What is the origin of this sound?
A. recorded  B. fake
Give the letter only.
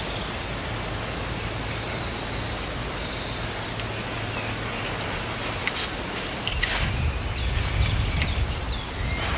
A